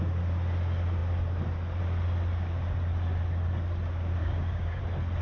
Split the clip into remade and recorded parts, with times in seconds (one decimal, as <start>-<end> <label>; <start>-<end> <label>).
0.0-4.2 recorded; 4.2-4.8 remade; 4.8-5.2 recorded